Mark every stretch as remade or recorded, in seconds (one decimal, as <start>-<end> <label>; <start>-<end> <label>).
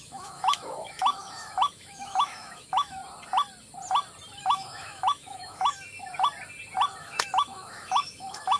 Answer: 0.0-3.0 remade; 3.0-4.4 recorded; 4.4-5.9 remade; 5.9-7.0 recorded; 7.0-8.6 remade